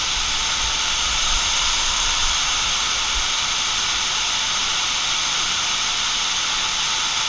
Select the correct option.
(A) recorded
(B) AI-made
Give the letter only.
A